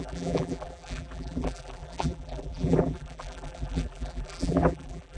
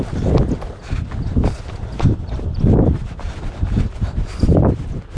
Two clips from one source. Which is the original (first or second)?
second